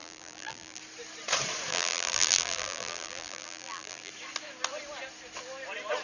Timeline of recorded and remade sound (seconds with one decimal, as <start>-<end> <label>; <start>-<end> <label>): 0.0-0.8 remade; 0.8-1.7 recorded; 1.7-4.1 remade; 4.1-6.0 recorded